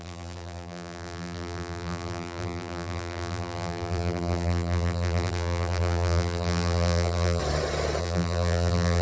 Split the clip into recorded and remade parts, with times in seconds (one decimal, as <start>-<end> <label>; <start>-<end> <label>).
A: 0.0-7.4 remade; 7.4-8.0 recorded; 8.0-9.0 remade